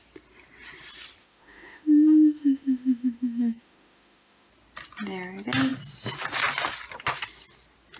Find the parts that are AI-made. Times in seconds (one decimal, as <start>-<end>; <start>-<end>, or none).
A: 1.2-4.5